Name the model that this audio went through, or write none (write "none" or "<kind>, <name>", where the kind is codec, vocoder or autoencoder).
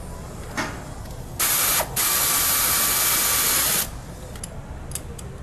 none